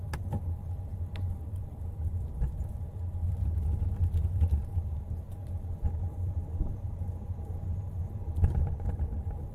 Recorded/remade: recorded